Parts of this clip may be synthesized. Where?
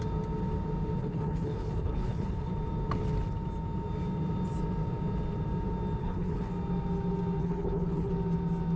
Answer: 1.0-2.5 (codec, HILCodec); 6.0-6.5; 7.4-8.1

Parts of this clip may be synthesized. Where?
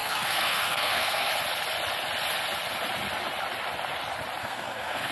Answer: 0.0-1.3 (codec, SNAC); 4.4-5.1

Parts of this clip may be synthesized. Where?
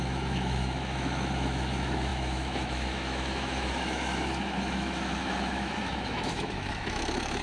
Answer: 0.0-7.4 (autoencoder, DAC-VAE)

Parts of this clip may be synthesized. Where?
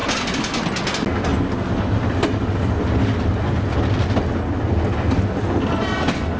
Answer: none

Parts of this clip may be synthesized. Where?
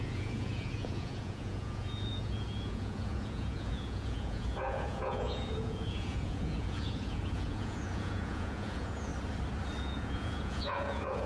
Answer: 0.0-9.1 (vocoder, Vocos); 9.8-11.3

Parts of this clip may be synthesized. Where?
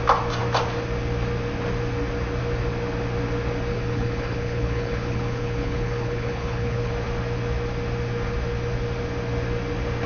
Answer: 3.7-6.9 (codec, HILCodec)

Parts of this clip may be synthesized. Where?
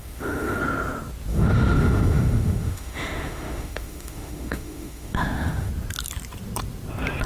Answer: 0.0-0.6 (autoencoder, DAC-VAE); 1.3-5.7